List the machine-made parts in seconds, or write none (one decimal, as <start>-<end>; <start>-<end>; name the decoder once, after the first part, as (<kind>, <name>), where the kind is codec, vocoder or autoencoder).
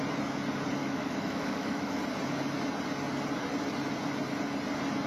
0.8-2.0 (autoencoder, DAC-VAE)